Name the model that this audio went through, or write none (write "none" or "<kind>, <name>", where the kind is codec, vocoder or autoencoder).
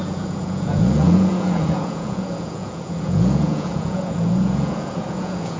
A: vocoder, Vocos